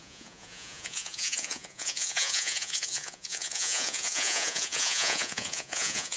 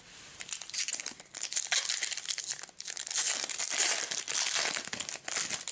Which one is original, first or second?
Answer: second